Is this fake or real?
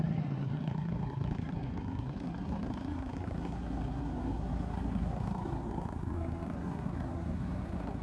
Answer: fake